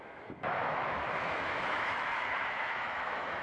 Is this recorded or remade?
remade